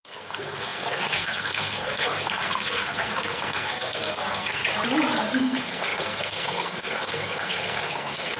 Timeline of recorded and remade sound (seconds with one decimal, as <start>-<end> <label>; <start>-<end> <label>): 0.0-4.6 remade; 4.6-5.4 recorded; 5.4-8.4 remade